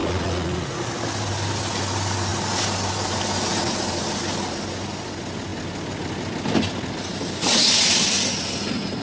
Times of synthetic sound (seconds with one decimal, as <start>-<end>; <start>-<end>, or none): 0.0-0.8